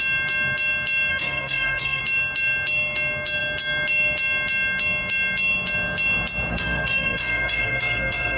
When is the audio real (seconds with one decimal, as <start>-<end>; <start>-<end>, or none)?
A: 0.0-1.1; 2.0-6.5